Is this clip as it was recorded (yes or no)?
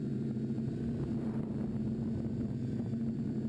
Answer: no